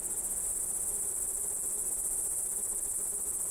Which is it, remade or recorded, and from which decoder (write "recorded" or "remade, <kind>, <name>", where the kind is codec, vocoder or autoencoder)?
recorded